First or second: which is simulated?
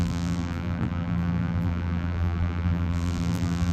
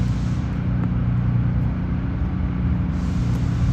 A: first